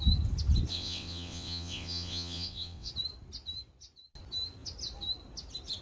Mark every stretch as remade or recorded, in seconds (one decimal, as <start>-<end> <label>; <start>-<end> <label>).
0.0-0.7 recorded; 0.7-2.9 remade; 2.9-5.8 recorded